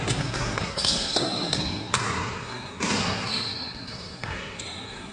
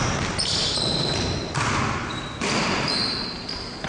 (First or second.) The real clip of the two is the second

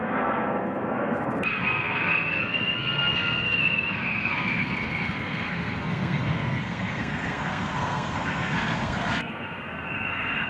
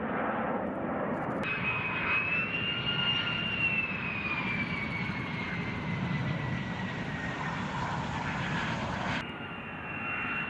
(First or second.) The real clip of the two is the second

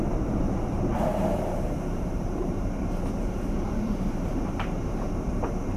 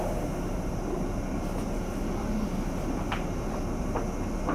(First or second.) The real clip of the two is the second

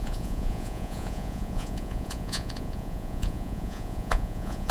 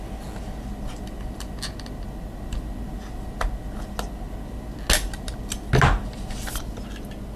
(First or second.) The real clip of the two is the second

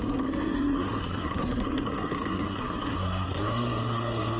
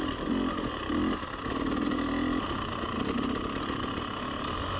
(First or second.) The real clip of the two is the second